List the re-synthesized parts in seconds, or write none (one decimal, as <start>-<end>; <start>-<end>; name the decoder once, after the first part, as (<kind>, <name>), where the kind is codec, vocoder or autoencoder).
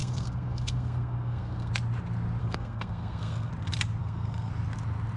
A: 0.0-1.7 (codec, SNAC); 2.4-3.5; 4.0-4.5